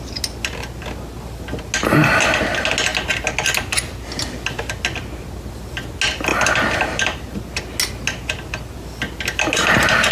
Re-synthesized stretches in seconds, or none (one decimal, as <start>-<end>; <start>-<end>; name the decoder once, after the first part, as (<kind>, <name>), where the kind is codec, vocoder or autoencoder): none